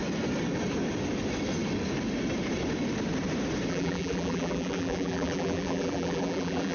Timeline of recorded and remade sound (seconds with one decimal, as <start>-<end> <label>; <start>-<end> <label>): 0.0-3.7 recorded; 3.7-6.7 remade